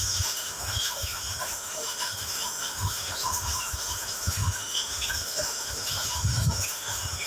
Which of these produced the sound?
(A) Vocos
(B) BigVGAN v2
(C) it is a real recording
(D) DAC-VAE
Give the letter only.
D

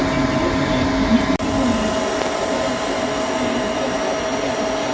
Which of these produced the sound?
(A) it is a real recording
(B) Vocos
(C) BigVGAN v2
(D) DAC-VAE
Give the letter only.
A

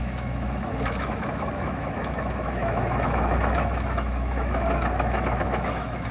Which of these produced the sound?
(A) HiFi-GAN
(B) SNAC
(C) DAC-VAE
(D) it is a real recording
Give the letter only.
C